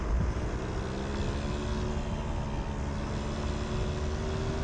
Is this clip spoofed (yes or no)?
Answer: no